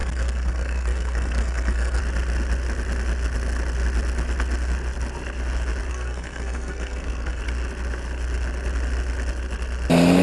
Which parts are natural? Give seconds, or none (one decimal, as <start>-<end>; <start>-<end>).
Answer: 2.0-5.9; 7.4-10.2